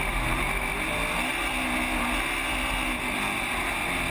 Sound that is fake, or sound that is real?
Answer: real